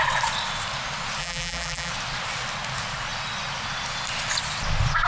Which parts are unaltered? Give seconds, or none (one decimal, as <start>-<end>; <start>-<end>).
0.0-1.2; 1.9-5.1